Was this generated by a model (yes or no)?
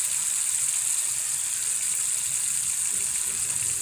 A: no